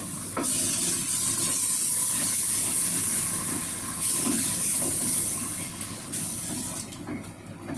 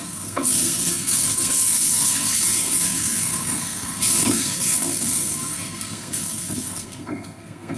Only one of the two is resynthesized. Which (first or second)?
second